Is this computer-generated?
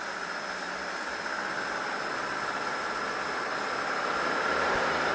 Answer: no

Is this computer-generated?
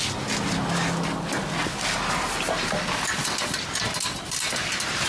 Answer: no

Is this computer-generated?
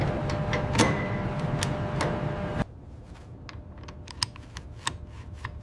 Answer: no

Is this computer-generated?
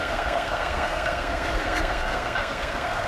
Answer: yes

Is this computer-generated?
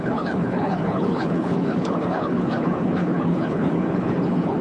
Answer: yes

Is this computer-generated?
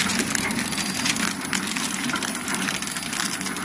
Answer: no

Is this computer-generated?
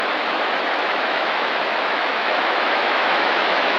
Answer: yes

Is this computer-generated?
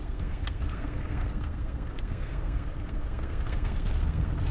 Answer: yes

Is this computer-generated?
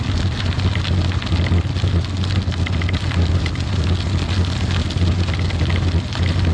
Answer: no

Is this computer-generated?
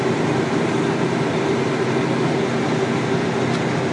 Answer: no